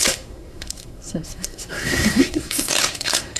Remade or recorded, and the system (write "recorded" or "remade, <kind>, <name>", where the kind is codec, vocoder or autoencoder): remade, codec, SNAC